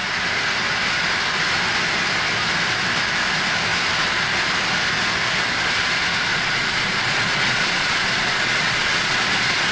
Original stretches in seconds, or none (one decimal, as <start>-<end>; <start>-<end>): 0.0-6.3